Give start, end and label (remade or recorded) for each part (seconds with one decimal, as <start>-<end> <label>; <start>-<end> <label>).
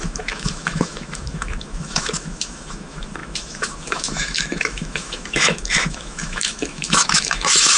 0.0-7.8 remade